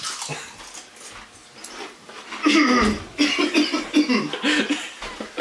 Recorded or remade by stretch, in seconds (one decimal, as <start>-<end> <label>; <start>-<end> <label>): 0.0-5.4 recorded